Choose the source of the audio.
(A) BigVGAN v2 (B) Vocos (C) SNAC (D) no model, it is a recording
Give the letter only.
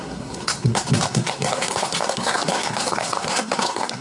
C